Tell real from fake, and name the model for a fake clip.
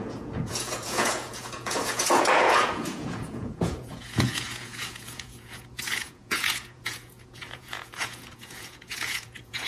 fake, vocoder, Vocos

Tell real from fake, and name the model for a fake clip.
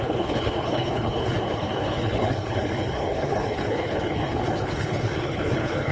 fake, codec, HILCodec